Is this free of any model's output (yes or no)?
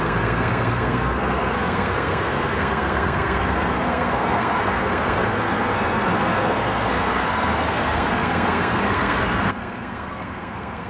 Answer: no